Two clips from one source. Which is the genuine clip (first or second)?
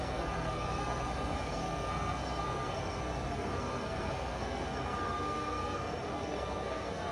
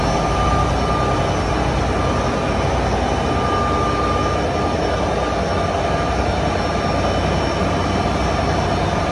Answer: second